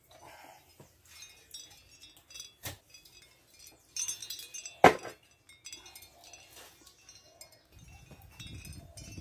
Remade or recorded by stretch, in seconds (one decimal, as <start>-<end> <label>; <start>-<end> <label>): 0.0-9.2 recorded